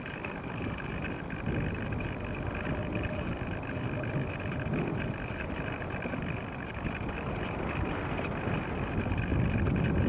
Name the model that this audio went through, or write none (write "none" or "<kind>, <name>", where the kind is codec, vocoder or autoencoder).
none